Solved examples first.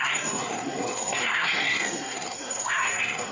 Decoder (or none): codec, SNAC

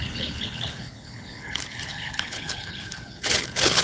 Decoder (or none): codec, HILCodec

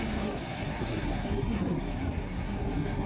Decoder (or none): codec, SNAC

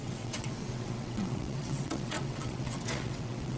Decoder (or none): vocoder, WaveNeXt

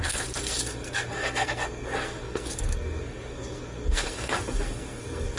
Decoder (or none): codec, SNAC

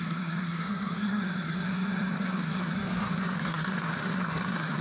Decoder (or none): codec, SNAC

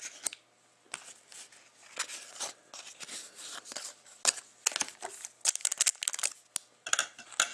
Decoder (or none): none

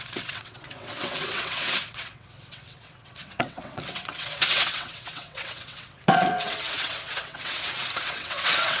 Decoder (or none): vocoder, WaveNeXt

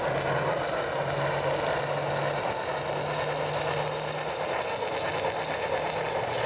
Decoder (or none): none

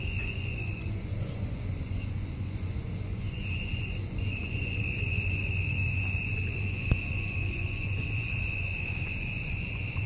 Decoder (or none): vocoder, Vocos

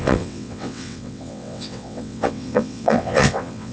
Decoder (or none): vocoder, WaveNeXt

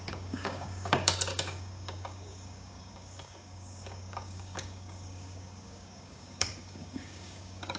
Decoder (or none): codec, DAC